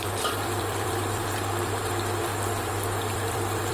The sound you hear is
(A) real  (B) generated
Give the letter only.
B